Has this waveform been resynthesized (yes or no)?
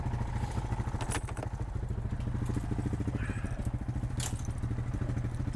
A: no